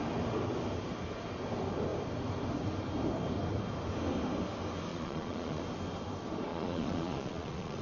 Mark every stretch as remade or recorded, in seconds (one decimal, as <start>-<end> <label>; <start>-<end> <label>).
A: 0.0-4.9 recorded; 4.9-5.6 remade; 5.6-6.5 recorded; 6.5-7.8 remade